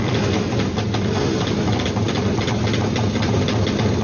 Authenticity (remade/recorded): recorded